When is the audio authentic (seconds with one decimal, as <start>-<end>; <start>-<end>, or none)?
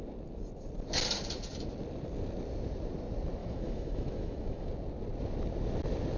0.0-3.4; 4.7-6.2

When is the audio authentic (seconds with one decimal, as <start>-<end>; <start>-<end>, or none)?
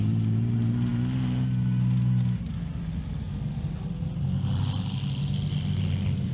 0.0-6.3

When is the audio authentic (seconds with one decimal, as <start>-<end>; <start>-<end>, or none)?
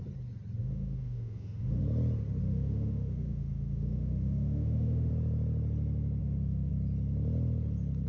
0.0-0.6; 1.8-2.4; 5.1-6.2; 6.7-8.1